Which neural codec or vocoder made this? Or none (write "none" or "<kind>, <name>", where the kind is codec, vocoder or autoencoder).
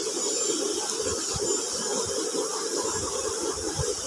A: none